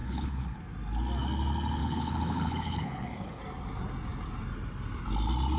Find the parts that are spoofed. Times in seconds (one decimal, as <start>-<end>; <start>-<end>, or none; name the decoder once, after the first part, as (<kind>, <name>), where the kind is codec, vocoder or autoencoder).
0.0-0.6 (codec, HILCodec); 1.8-3.4